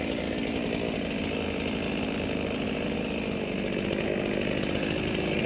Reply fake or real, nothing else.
real